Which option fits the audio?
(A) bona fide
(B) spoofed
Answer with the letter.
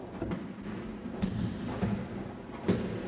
B